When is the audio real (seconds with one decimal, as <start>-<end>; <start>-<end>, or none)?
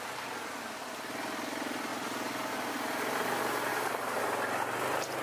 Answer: 0.0-3.7; 4.2-5.2